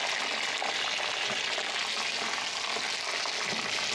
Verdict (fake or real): real